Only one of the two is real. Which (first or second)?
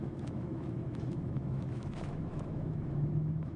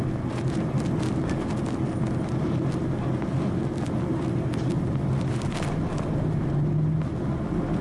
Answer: second